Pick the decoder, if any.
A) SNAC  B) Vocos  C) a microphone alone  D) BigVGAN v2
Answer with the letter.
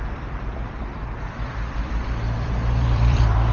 D